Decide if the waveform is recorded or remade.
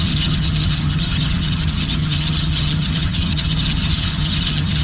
remade